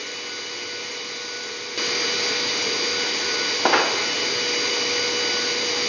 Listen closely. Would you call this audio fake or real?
real